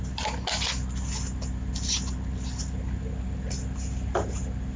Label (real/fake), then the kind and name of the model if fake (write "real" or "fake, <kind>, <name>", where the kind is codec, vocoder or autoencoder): real